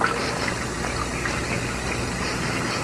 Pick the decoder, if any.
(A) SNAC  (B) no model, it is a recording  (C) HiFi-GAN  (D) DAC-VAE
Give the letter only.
B